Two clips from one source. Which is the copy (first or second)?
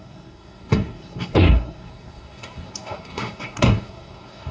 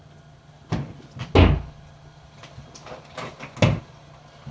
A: first